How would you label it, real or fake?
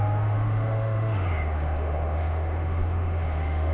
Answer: fake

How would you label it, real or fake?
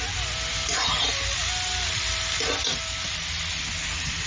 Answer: real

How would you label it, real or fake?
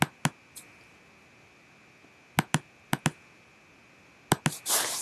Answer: real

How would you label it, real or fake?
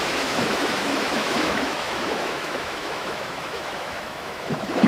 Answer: fake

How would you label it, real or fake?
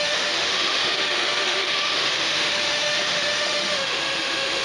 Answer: fake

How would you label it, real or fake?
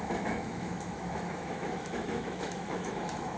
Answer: fake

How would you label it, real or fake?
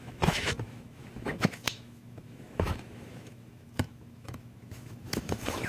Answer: fake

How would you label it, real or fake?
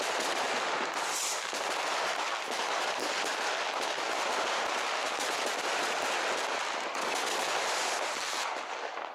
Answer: real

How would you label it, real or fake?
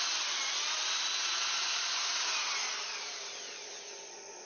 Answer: real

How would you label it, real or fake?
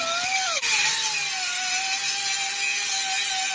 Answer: real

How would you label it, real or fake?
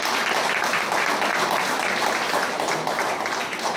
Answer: real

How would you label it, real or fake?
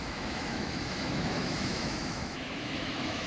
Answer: fake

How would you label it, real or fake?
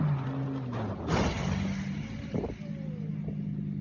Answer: real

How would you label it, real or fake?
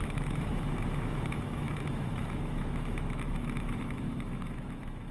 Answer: fake